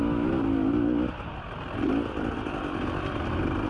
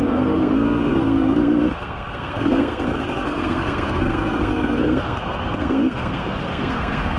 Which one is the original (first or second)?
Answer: first